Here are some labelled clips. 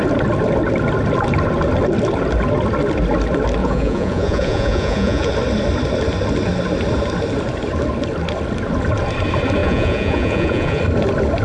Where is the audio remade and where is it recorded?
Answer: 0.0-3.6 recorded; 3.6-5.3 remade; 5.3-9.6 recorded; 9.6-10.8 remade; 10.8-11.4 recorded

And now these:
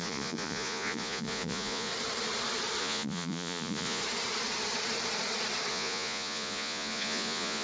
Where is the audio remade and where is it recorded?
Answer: 0.0-1.9 remade; 1.9-2.8 recorded; 2.8-4.0 remade; 4.0-5.7 recorded; 5.7-7.6 remade

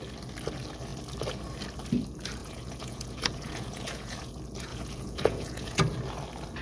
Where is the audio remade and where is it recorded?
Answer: 0.0-2.4 recorded; 2.4-4.3 remade; 4.3-4.7 recorded; 4.7-5.8 remade; 5.8-6.6 recorded

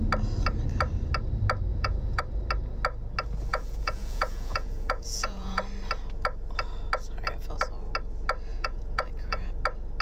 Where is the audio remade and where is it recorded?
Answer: 0.0-1.7 recorded; 1.7-2.2 remade; 2.2-3.5 recorded; 3.5-5.6 remade; 5.6-8.5 recorded; 8.5-9.5 remade; 9.5-10.0 recorded

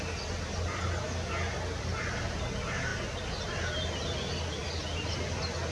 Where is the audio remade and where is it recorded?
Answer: 0.0-5.7 recorded

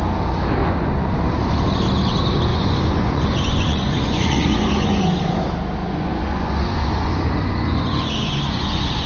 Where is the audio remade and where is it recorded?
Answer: 0.0-0.6 recorded; 0.6-1.1 remade; 1.1-2.5 recorded; 2.5-5.1 remade; 5.1-5.8 recorded; 5.8-9.1 remade

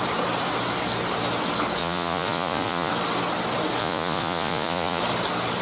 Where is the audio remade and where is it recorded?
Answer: 0.0-1.8 recorded; 1.8-2.9 remade; 2.9-3.8 recorded; 3.8-5.0 remade; 5.0-5.6 recorded